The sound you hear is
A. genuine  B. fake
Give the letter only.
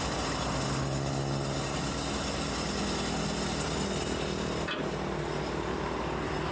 A